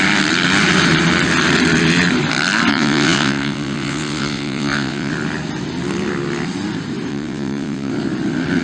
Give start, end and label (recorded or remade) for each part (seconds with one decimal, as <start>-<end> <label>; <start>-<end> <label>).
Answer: 0.0-2.7 recorded; 2.7-5.1 remade; 5.1-7.1 recorded; 7.1-7.9 remade; 7.9-8.6 recorded